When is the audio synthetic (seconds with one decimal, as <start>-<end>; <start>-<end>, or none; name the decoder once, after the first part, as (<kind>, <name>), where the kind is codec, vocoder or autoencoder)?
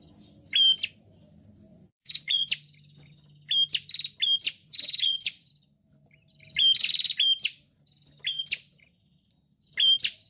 1.7-2.5 (vocoder, Vocos); 4.6-5.5